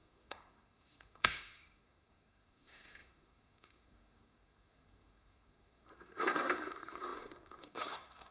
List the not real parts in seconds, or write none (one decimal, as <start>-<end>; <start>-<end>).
0.0-8.3